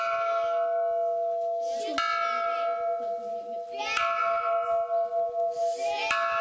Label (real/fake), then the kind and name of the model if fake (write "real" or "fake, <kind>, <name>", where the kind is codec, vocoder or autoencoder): real